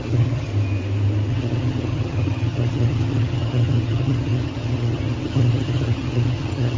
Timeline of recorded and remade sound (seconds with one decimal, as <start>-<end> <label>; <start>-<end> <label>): 0.0-0.5 remade; 0.5-1.3 recorded; 1.3-6.8 remade